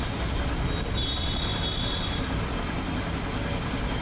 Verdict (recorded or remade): recorded